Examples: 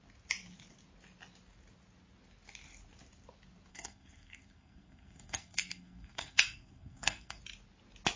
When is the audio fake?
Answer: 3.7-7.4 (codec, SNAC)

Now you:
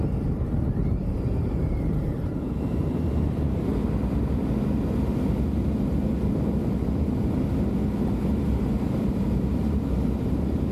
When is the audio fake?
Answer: 0.0-3.7 (vocoder, BigVGAN v2); 8.5-10.7

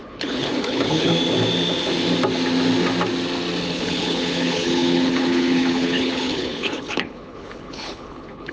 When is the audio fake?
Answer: 0.0-1.1 (codec, HILCodec); 3.6-8.5

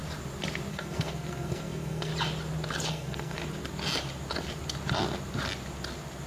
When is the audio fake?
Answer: 0.7-2.1 (codec, SNAC); 2.9-3.4

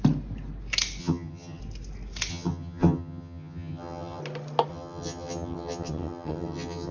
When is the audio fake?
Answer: 1.0-1.6 (vocoder, HiFi-GAN); 2.3-4.2; 4.7-6.9

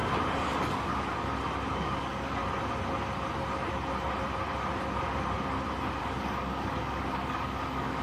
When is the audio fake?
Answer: 0.7-1.1 (codec, DAC); 1.7-2.4; 6.0-8.0

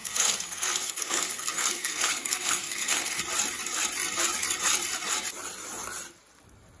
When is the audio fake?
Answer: 0.0-3.2 (codec, SNAC)

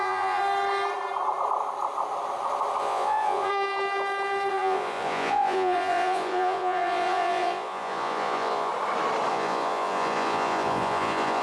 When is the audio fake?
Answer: 0.0-0.4 (vocoder, Vocos); 2.8-3.5; 4.5-8.7; 9.3-11.4